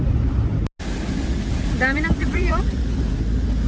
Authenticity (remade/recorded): recorded